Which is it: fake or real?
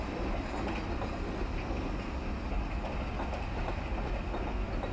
real